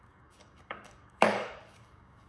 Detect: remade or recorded remade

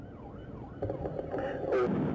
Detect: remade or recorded recorded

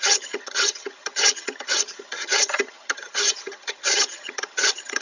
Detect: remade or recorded remade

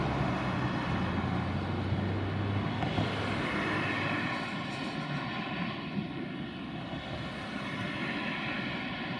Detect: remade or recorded recorded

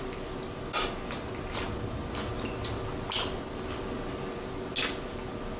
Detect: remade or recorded recorded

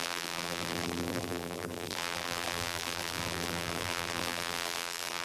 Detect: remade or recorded remade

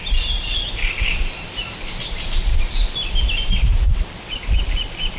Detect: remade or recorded recorded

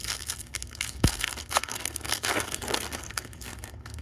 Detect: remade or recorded remade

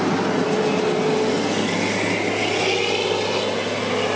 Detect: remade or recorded recorded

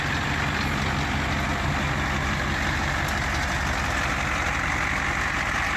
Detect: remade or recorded recorded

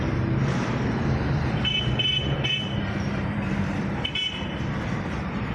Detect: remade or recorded remade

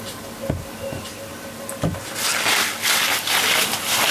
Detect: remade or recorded recorded